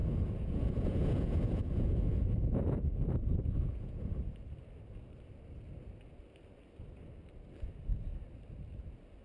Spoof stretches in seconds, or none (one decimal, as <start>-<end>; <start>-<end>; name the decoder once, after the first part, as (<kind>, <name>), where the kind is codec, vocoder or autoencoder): 0.0-4.1 (vocoder, Vocos)